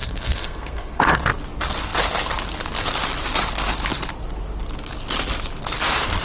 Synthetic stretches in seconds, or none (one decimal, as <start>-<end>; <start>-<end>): 0.0-1.3